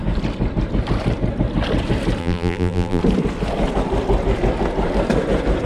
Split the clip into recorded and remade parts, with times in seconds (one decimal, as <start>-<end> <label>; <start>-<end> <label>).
0.0-2.2 recorded; 2.2-3.0 remade; 3.0-5.7 recorded